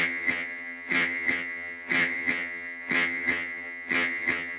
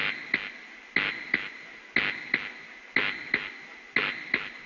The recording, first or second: second